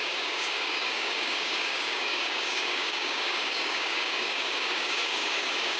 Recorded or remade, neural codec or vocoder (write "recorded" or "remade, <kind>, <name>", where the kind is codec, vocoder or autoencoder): remade, codec, DAC